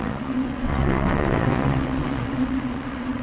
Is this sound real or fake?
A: fake